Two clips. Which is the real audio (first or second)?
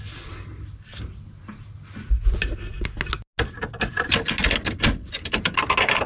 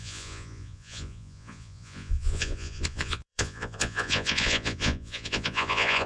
first